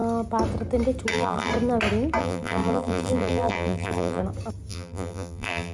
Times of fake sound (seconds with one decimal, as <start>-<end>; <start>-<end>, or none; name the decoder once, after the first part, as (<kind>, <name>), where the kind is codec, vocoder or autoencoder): 1.1-1.5 (vocoder, BigVGAN v2); 2.2-4.2; 4.7-5.7